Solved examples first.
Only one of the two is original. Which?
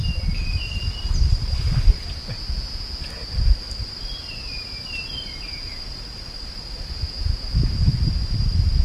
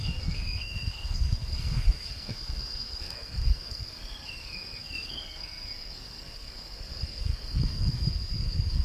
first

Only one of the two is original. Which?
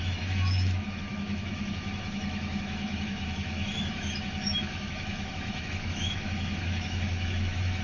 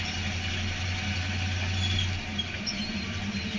second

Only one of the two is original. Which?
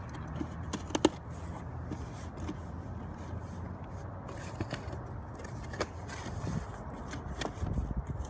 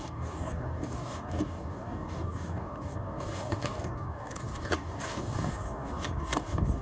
first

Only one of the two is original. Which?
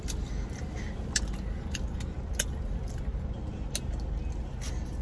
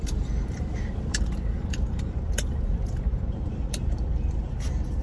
first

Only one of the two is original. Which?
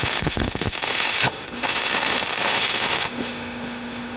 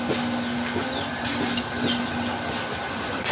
second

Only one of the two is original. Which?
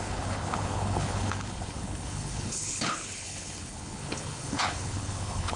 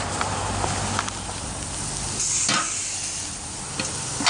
second